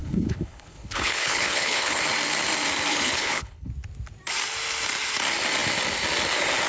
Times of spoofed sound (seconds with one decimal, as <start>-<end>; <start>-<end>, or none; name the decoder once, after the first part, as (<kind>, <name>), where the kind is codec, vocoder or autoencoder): 0.0-2.0 (codec, HILCodec); 2.9-3.7